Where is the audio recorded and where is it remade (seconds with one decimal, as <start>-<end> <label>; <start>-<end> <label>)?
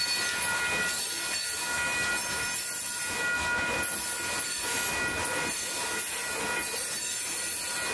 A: 0.0-7.9 recorded